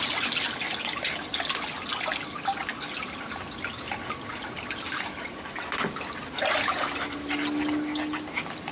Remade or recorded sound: recorded